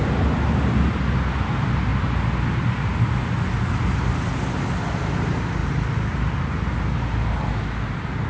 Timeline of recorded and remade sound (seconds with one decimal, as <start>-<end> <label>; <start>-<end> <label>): 0.0-8.3 recorded